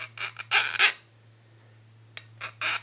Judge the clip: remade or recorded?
recorded